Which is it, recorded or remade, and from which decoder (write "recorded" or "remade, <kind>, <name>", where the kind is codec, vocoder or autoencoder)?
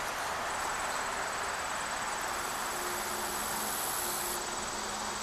recorded